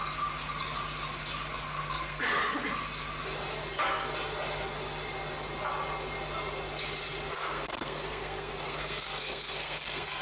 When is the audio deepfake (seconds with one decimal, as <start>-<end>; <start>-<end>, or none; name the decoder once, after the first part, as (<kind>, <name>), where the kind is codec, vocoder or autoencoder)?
1.7-2.2 (codec, SNAC); 7.3-10.2